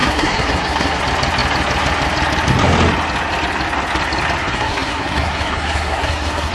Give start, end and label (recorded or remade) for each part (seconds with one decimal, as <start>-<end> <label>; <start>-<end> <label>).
0.0-1.0 remade; 1.0-4.4 recorded; 4.4-6.5 remade